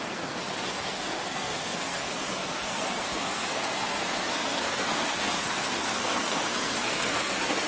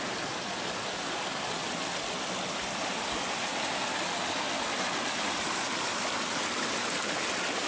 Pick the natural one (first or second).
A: second